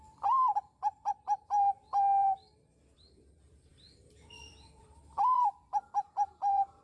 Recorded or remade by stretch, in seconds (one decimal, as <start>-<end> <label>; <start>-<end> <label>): 0.0-6.8 remade